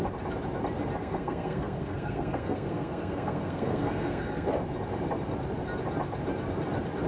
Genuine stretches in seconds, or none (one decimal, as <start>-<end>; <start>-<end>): 0.0-1.0; 4.5-7.1